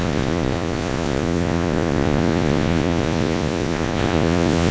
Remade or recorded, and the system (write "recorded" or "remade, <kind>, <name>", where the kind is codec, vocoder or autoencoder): remade, vocoder, Vocos